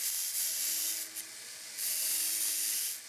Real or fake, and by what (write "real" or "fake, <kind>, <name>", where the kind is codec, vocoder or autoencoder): real